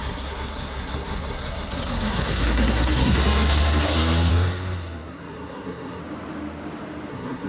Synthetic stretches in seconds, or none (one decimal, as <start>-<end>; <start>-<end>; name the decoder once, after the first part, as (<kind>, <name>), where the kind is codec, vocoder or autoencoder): 0.0-6.0 (codec, SNAC); 7.1-7.5